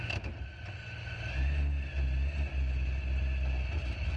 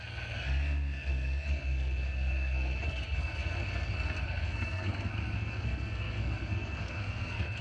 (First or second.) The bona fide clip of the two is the first